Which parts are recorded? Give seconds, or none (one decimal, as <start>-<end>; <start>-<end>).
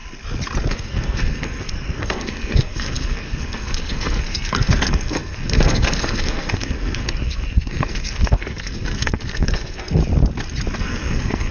0.0-0.7; 10.0-10.8